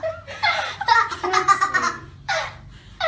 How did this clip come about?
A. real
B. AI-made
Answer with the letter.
A